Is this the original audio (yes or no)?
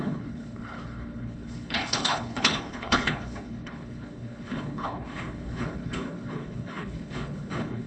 no